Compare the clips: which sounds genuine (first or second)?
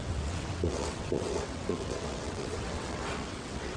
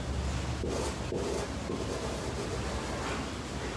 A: second